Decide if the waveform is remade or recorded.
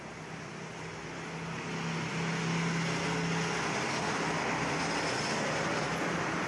recorded